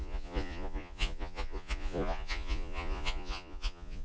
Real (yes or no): no